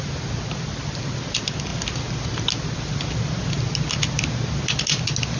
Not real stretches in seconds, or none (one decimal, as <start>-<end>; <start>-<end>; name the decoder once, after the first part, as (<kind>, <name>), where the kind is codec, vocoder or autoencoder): none